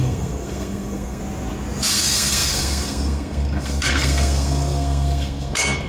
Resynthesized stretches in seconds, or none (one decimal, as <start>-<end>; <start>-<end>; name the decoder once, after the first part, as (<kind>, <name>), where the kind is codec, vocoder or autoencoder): 0.0-1.2 (codec, SNAC); 1.9-5.9

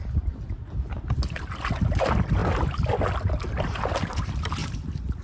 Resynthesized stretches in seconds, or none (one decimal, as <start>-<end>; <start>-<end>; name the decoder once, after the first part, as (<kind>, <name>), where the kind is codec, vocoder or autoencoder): none

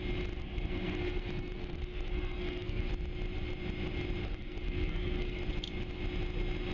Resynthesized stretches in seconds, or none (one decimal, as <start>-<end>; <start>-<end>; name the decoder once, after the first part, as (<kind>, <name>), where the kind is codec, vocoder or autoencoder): 0.4-2.9 (codec, SNAC); 4.2-5.4

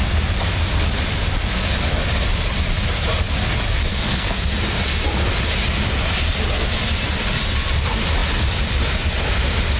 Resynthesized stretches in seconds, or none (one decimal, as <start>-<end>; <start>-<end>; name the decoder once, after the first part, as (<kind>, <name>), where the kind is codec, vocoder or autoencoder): 3.9-4.5 (codec, SNAC)

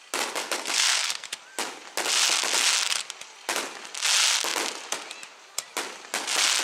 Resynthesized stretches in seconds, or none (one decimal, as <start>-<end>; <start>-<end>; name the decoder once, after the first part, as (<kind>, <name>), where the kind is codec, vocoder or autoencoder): 0.4-1.3 (codec, SNAC)

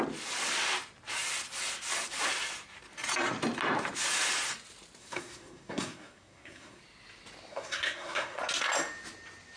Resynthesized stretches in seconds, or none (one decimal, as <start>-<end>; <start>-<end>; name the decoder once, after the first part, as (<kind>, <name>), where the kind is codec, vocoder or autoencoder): 5.0-6.8 (codec, SNAC); 7.5-8.4

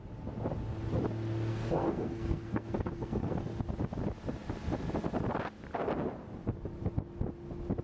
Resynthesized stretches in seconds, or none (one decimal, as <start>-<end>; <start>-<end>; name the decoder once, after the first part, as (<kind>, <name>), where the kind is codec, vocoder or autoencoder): 1.5-3.4 (codec, SNAC)

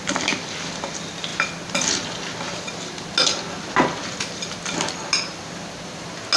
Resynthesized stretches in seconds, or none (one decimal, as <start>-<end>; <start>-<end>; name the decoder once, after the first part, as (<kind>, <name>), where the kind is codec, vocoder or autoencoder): none